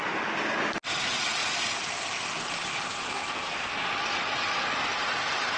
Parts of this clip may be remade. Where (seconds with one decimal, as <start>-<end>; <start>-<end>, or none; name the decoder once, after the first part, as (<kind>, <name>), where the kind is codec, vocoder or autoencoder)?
2.9-3.7 (codec, SNAC)